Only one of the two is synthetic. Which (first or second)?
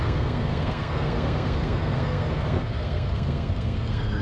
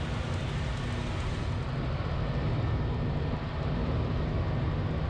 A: first